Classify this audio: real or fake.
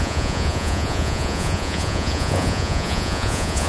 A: fake